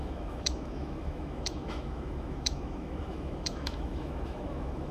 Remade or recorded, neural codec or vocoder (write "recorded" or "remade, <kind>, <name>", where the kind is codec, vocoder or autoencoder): remade, autoencoder, DAC-VAE